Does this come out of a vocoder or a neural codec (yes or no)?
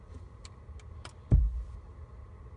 no